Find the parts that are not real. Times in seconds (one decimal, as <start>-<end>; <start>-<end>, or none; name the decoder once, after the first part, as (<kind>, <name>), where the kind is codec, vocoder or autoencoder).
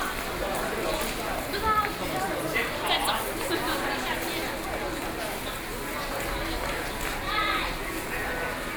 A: none